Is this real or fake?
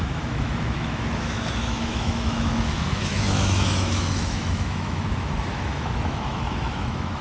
fake